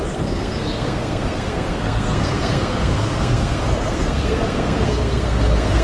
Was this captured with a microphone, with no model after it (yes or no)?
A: no